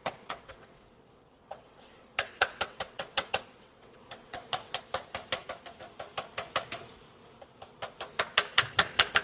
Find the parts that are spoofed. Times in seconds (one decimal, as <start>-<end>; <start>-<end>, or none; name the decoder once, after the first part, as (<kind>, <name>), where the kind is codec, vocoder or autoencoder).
0.0-4.8 (vocoder, WaveNeXt)